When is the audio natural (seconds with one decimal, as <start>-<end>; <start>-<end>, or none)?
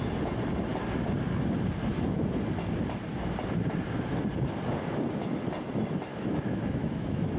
0.0-6.1